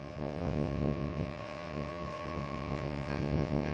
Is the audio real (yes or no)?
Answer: no